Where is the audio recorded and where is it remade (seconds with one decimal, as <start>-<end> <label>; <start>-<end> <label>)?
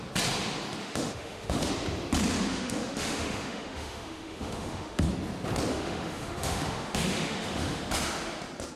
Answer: 0.0-0.8 recorded; 0.8-1.7 remade; 1.7-2.5 recorded; 2.5-5.1 remade; 5.1-5.7 recorded; 5.7-7.8 remade; 7.8-8.8 recorded